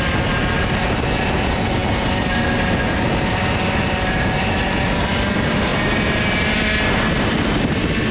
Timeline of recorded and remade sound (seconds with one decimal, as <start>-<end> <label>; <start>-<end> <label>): 0.0-8.1 recorded